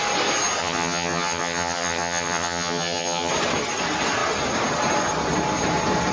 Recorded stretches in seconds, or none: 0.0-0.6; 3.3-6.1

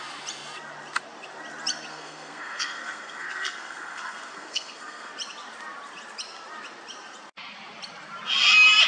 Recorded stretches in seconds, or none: 0.0-1.9; 5.1-8.9

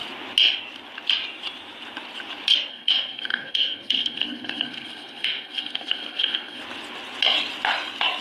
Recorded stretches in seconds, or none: 0.0-2.7; 6.6-8.2

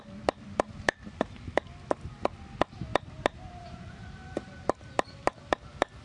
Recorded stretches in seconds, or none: 0.0-2.9; 5.5-6.0

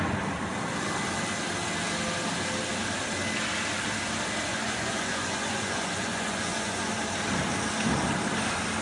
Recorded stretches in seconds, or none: 0.0-4.5; 6.9-8.8

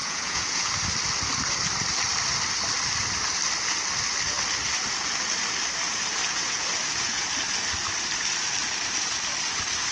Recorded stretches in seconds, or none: 0.7-6.2; 7.3-9.9

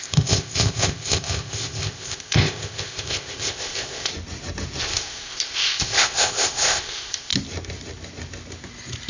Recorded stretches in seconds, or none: 4.1-4.8; 7.3-9.1

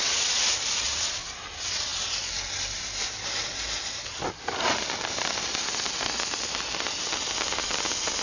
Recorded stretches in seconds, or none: 0.0-8.2